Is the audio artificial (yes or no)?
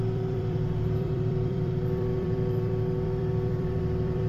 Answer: yes